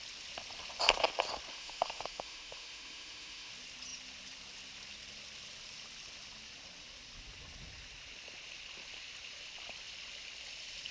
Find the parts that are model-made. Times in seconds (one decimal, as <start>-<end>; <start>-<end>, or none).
1.5-3.5